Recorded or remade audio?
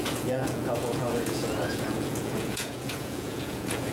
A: remade